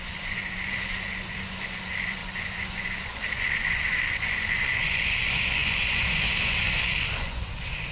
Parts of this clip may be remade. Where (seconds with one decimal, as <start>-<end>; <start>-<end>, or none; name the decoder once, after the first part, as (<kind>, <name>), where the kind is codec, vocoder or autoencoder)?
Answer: 0.0-7.9 (vocoder, Vocos)